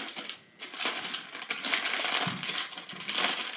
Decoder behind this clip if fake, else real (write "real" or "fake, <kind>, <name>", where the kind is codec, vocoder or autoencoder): real